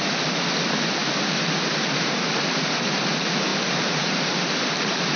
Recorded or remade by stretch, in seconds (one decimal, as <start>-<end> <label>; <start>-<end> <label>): 0.0-1.0 remade; 1.0-2.7 recorded; 2.7-5.2 remade